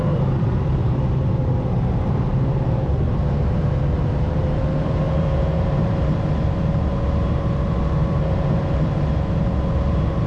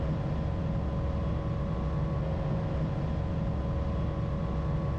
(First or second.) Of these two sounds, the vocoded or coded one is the first